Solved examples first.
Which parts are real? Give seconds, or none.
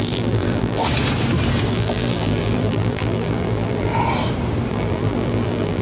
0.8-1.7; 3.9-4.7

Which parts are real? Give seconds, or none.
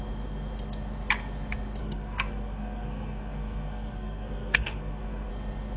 0.0-1.8; 5.3-5.8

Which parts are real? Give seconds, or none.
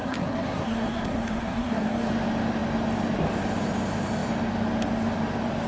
2.1-5.7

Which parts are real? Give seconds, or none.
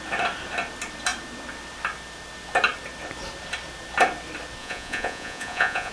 0.0-4.6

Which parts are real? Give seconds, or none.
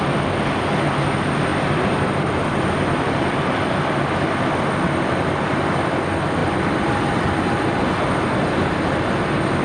0.0-1.5; 3.3-6.4; 9.0-9.6